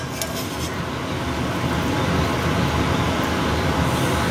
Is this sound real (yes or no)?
yes